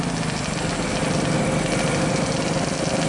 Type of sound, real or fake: real